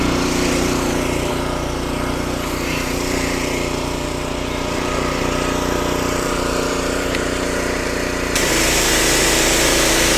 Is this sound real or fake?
fake